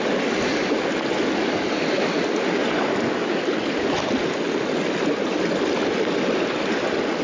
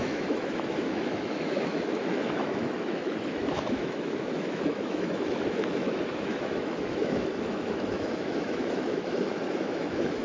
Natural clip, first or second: first